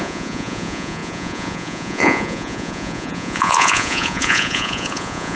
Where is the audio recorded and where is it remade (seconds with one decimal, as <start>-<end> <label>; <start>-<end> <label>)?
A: 0.0-5.4 remade